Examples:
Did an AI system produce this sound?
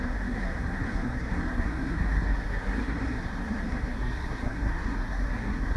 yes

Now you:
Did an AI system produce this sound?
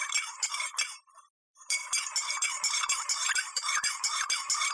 yes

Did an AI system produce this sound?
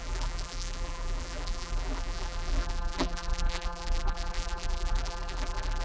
yes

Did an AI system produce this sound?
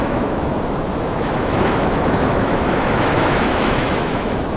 yes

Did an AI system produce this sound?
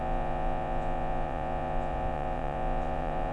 yes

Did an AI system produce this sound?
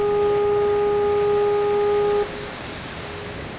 no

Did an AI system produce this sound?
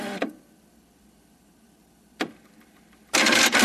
yes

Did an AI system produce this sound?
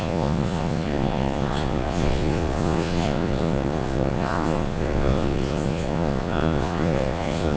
yes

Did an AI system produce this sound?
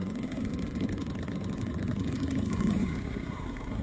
yes